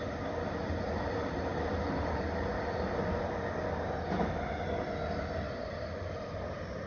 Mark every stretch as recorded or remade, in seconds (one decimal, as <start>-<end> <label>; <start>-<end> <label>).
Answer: 0.0-6.9 recorded